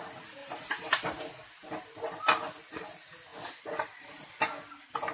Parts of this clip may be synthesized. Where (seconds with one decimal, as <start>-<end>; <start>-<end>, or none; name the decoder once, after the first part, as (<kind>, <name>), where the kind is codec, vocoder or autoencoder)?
0.4-1.2 (vocoder, BigVGAN v2); 1.6-2.2